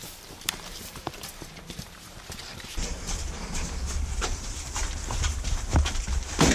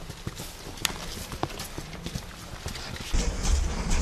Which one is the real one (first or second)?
second